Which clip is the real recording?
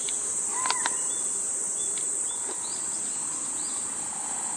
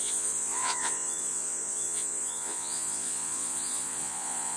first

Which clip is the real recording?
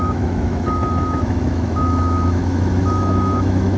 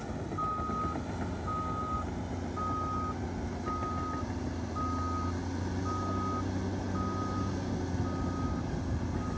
second